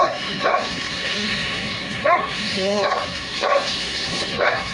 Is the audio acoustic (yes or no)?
no